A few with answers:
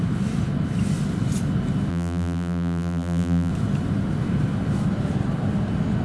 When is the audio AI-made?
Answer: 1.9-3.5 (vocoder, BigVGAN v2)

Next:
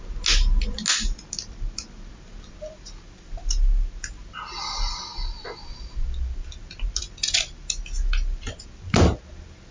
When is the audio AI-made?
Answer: none